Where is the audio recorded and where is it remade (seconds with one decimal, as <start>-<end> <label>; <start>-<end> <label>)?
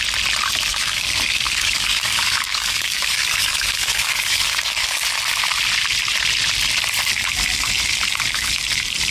0.0-0.7 recorded; 0.7-5.0 remade; 5.0-9.1 recorded